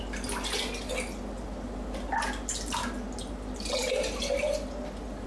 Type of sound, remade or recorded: recorded